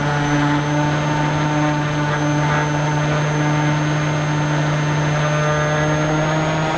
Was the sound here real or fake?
real